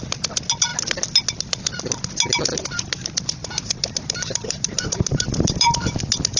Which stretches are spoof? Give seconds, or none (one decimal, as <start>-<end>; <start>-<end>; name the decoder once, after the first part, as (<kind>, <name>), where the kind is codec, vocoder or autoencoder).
3.4-6.0 (vocoder, BigVGAN v2)